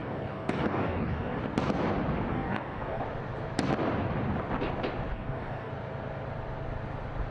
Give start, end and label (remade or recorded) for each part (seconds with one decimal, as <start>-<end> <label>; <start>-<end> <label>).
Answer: 0.0-1.4 remade; 1.4-2.3 recorded; 2.3-3.0 remade; 3.0-5.1 recorded; 5.1-5.7 remade; 5.7-7.3 recorded